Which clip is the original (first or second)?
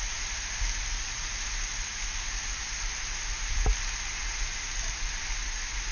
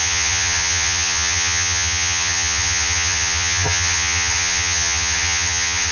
first